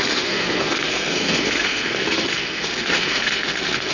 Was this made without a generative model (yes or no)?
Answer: no